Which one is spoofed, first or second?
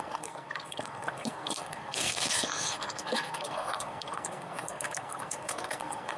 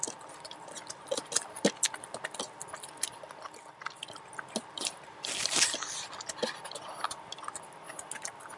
first